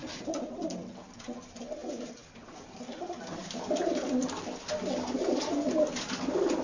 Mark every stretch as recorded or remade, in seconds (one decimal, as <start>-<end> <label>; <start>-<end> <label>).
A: 0.0-6.6 recorded